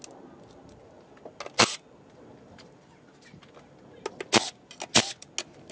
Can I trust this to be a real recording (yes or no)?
yes